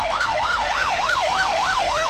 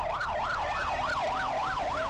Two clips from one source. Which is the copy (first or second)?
first